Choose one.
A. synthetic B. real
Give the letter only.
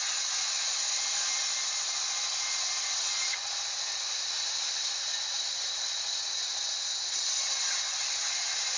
B